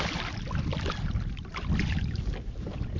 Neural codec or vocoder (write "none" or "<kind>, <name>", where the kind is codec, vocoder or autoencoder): none